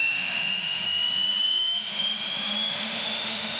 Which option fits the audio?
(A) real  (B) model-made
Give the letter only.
B